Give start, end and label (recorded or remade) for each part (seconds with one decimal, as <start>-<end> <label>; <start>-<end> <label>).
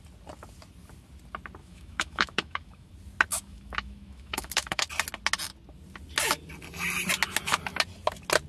0.0-1.6 recorded; 1.6-2.9 remade; 2.9-3.3 recorded; 3.3-4.9 remade; 4.9-8.5 recorded